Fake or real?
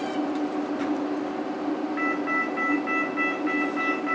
real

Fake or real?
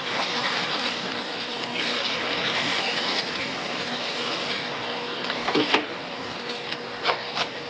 fake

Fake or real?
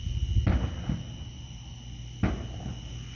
real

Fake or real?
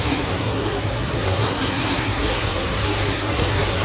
fake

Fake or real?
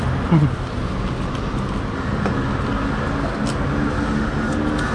real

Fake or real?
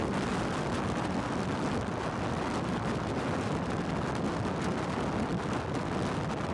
real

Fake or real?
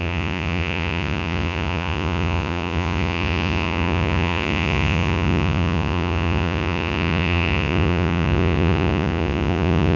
fake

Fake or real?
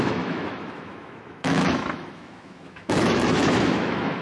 fake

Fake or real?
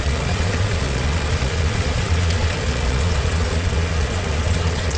fake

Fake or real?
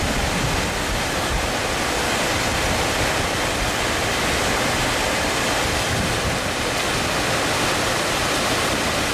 real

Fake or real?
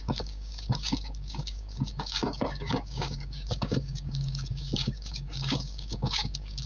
fake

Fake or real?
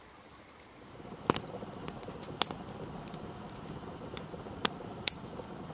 real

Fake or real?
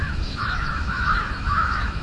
fake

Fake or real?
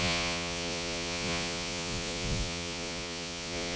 fake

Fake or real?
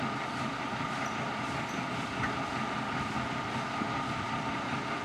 real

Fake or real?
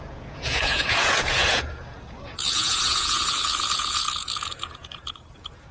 fake